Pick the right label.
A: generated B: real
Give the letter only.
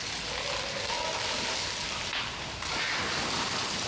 B